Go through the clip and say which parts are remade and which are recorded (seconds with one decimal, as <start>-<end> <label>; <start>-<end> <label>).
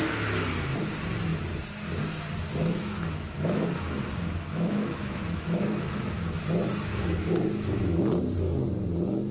0.0-2.6 recorded; 2.6-3.6 remade; 3.6-4.5 recorded; 4.5-6.4 remade; 6.4-6.9 recorded; 6.9-8.0 remade; 8.0-9.3 recorded